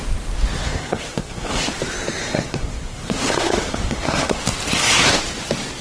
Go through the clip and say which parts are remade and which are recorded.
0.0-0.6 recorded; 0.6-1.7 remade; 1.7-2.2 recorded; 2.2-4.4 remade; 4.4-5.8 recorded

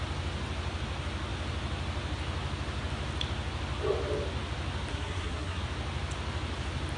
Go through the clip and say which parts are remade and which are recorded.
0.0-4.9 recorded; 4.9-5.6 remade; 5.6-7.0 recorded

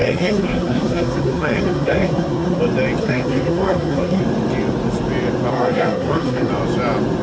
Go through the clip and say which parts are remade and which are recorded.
0.0-2.6 remade; 2.6-3.0 recorded; 3.0-4.2 remade; 4.2-5.5 recorded; 5.5-6.5 remade; 6.5-7.2 recorded